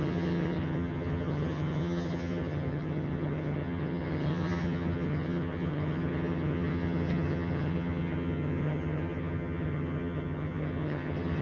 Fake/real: fake